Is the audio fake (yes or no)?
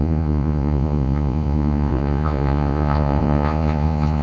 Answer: yes